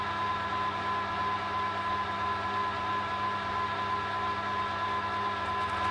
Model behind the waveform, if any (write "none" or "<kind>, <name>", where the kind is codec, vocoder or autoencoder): none